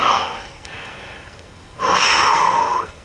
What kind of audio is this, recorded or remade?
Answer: remade